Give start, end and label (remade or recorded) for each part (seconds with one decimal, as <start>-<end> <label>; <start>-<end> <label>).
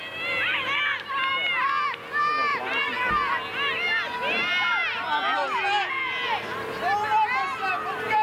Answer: 0.0-2.5 recorded; 2.5-3.1 remade; 3.1-8.2 recorded